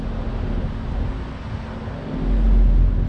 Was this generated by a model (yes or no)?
no